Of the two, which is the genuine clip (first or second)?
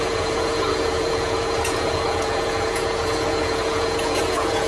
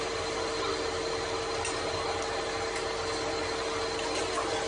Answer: second